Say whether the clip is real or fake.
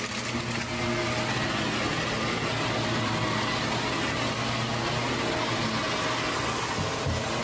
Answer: real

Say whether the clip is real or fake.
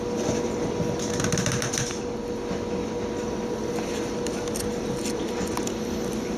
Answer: real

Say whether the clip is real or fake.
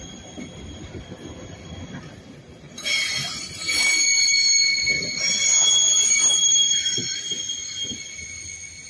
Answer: real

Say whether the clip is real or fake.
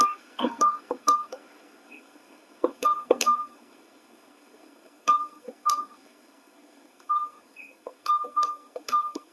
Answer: fake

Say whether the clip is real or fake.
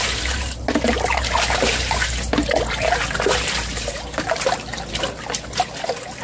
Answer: real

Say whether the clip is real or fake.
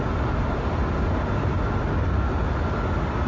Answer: real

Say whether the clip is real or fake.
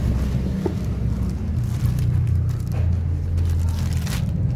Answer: real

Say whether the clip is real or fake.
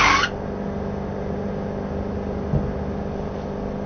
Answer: real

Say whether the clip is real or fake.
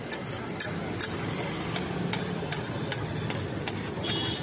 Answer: real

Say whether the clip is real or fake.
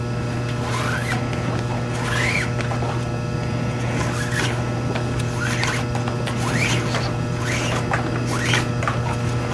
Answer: real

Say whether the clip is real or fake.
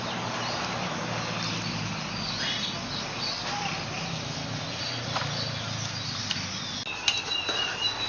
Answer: real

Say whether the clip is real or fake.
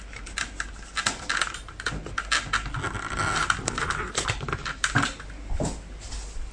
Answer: real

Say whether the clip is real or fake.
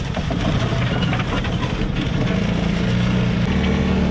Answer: real